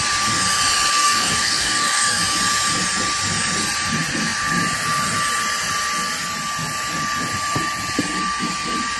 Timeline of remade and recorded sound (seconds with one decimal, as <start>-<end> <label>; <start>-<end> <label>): 0.0-0.9 recorded; 0.9-2.2 remade; 2.2-9.0 recorded